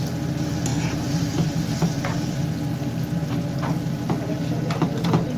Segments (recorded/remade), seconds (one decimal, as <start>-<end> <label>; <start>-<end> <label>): 0.0-0.7 recorded; 0.7-2.4 remade; 2.4-5.4 recorded